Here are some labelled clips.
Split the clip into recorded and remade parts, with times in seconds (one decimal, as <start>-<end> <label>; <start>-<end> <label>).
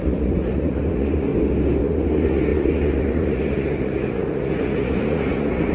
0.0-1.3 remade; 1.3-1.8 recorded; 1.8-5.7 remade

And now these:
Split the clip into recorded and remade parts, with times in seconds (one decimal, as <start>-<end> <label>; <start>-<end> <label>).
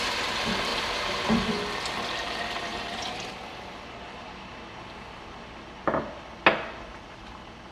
0.0-0.7 recorded; 0.7-1.5 remade; 1.5-2.7 recorded; 2.7-3.3 remade; 3.3-7.7 recorded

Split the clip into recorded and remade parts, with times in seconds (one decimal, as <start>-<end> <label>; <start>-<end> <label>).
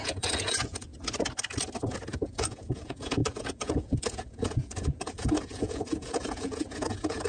0.0-0.9 remade; 0.9-1.9 recorded; 1.9-7.3 remade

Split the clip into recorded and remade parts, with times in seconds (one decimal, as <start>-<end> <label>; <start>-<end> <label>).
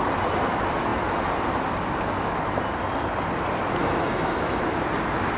0.0-3.8 recorded; 3.8-4.6 remade; 4.6-5.4 recorded